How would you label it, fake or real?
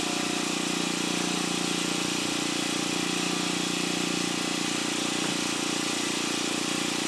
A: real